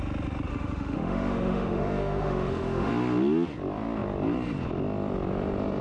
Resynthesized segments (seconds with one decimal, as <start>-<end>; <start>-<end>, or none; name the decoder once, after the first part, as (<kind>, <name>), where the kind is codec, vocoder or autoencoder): 0.5-2.9 (autoencoder, DAC-VAE)